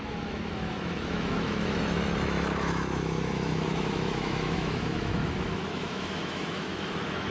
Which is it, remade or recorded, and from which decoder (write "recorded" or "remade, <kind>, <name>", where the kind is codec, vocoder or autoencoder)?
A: remade, autoencoder, DAC-VAE